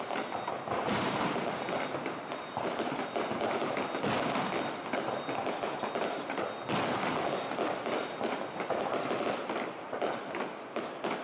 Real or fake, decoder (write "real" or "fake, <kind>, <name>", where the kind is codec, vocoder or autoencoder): real